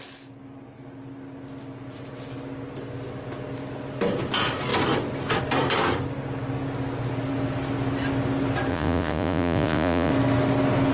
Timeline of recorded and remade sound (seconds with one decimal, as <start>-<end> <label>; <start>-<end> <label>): 0.0-8.7 recorded; 8.7-10.1 remade; 10.1-10.9 recorded